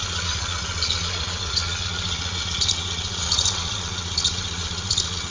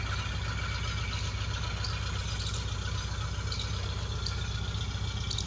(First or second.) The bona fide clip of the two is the second